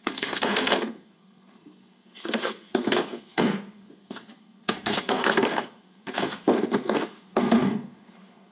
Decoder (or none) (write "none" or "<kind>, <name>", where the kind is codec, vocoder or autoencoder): codec, SNAC